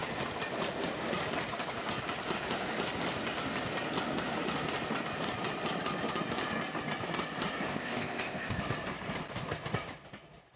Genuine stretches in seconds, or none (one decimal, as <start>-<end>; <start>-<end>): 0.0-7.7; 8.6-10.6